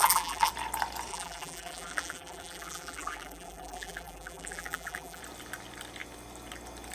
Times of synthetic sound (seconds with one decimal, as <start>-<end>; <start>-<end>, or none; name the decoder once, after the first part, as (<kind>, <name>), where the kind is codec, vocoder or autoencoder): 0.0-0.5 (vocoder, BigVGAN v2); 1.1-5.2